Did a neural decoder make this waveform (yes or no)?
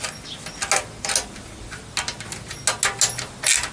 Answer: no